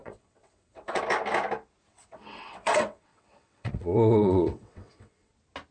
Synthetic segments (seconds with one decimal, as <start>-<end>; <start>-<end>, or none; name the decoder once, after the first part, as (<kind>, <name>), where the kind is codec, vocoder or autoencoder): 0.0-1.0 (vocoder, WaveNeXt); 1.9-5.3